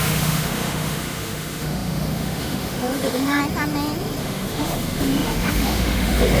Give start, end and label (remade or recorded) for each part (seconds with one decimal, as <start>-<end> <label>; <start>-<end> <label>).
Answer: 0.0-3.4 remade; 3.4-4.2 recorded; 4.2-6.4 remade